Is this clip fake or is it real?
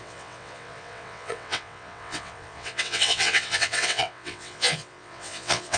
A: fake